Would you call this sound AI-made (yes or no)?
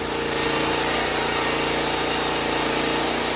no